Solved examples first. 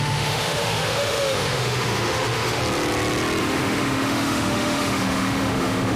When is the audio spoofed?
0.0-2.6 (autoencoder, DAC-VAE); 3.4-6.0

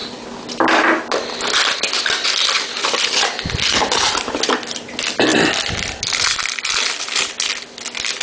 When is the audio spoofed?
none

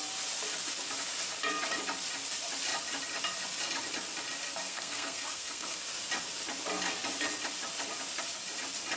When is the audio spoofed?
4.5-5.8 (codec, SNAC)

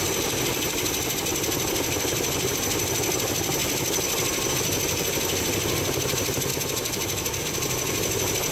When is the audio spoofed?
1.3-2.5 (vocoder, BigVGAN v2); 6.5-7.4

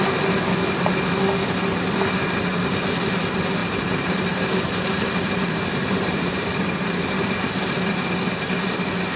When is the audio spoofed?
3.6-7.8 (vocoder, BigVGAN v2)

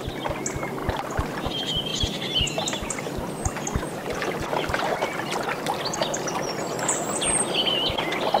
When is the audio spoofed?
1.9-2.5 (vocoder, BigVGAN v2)

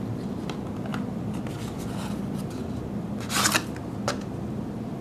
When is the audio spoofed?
none

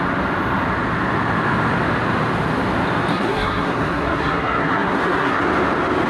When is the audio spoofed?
3.1-5.4 (codec, SNAC)